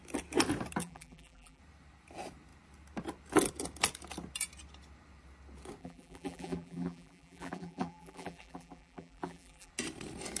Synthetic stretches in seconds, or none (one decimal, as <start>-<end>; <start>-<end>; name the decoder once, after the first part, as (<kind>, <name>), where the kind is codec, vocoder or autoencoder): 0.8-1.6 (vocoder, BigVGAN v2); 5.8-9.7